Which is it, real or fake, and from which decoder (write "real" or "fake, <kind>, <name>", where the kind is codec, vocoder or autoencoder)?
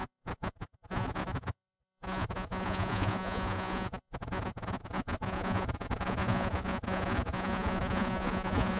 fake, vocoder, Vocos